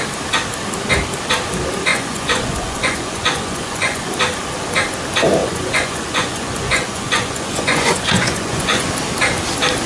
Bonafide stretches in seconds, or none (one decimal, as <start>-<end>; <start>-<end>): 0.0-1.9; 4.1-5.4; 8.9-9.9